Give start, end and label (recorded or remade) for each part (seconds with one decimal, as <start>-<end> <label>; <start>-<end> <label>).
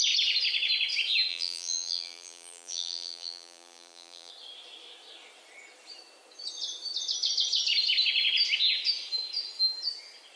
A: 0.0-1.3 recorded; 1.3-4.3 remade; 4.3-10.4 recorded